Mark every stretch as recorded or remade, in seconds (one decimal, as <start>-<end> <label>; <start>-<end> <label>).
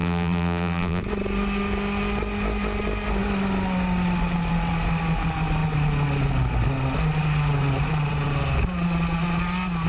0.0-1.0 remade; 1.0-9.9 recorded